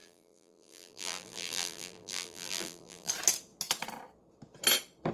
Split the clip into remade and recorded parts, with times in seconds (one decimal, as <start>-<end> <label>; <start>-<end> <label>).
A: 0.0-3.1 remade; 3.1-5.1 recorded